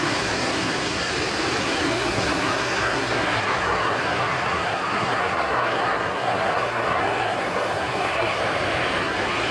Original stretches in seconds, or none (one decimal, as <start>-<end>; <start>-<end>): 1.1-1.6; 8.4-9.0